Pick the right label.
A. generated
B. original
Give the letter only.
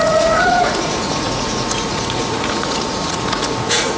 A